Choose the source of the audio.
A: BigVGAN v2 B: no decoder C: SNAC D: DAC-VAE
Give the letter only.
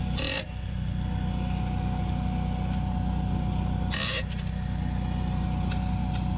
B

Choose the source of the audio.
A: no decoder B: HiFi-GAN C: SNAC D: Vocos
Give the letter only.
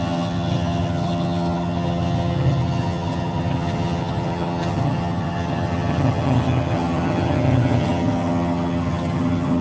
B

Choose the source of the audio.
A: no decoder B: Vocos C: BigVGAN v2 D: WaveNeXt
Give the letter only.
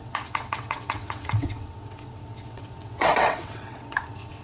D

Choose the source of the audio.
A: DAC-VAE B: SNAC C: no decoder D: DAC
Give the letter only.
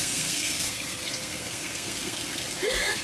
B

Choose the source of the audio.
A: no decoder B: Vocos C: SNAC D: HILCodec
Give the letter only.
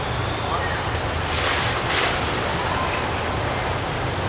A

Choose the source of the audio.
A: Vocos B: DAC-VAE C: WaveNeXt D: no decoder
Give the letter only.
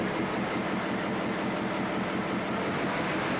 D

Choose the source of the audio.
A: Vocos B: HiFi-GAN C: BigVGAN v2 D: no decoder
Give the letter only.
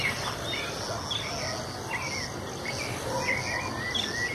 D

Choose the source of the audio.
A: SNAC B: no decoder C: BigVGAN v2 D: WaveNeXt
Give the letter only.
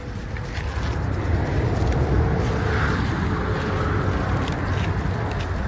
B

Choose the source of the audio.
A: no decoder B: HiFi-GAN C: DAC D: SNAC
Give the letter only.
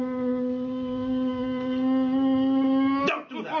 A